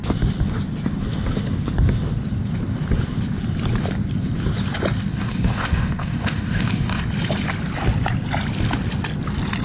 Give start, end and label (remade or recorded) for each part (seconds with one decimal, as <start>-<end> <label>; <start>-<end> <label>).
0.0-5.1 recorded; 5.1-7.0 remade; 7.0-9.6 recorded